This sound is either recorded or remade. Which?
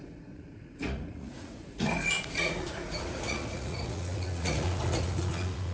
remade